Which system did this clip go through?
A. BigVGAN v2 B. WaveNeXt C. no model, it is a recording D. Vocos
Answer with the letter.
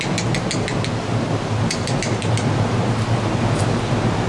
C